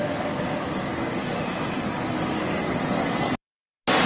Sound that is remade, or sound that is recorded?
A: recorded